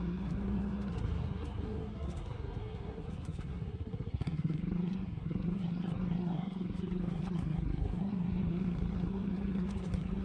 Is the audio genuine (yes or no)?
no